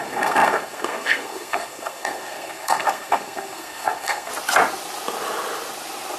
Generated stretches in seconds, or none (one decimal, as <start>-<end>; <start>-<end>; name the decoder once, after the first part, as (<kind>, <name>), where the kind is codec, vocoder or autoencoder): 0.0-4.3 (codec, SNAC)